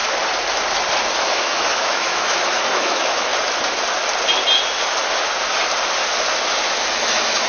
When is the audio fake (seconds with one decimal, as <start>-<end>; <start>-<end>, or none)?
1.1-3.3; 6.8-7.5